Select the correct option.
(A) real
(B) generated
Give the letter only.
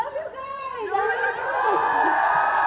B